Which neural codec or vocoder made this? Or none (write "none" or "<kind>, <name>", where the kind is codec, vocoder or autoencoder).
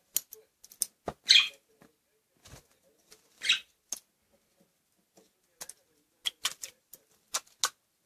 none